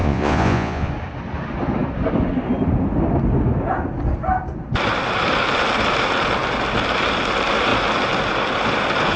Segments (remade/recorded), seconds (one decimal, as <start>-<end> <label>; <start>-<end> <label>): 0.0-0.9 remade; 0.9-9.2 recorded